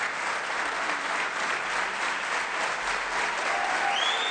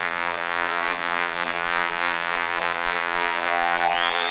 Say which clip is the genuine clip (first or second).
first